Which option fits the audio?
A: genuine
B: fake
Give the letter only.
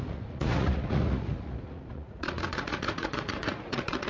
B